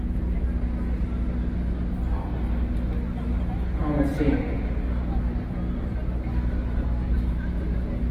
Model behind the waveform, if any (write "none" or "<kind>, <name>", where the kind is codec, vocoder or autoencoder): none